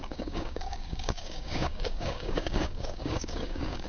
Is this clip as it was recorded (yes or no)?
no